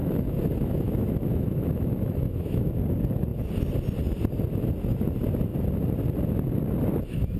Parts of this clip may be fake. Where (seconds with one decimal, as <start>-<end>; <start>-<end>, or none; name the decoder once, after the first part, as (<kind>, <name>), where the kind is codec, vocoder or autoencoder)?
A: 0.0-2.7 (autoencoder, DAC-VAE)